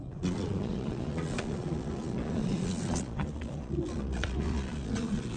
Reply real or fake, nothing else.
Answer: fake